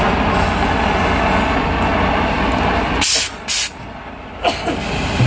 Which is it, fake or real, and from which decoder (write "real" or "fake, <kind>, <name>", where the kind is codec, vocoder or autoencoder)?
real